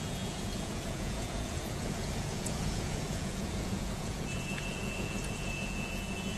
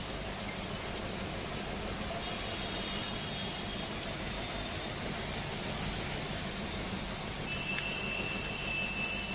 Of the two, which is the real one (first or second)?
second